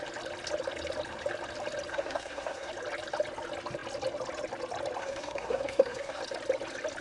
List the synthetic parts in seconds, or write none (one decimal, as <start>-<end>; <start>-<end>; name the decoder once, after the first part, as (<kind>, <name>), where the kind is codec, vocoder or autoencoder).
1.9-2.7 (codec, SNAC); 5.0-6.2